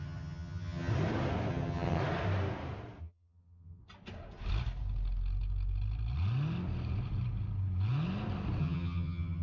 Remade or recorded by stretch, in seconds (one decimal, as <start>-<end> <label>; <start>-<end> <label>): 0.0-0.9 remade; 0.9-1.5 recorded; 1.5-2.0 remade; 2.0-3.0 recorded; 3.0-3.8 remade; 3.8-8.6 recorded; 8.6-9.4 remade